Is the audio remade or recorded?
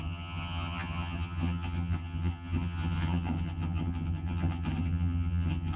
remade